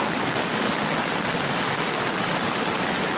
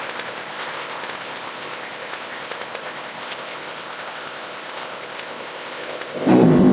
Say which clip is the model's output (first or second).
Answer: second